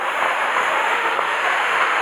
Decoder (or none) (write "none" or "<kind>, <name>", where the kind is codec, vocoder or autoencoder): autoencoder, DAC-VAE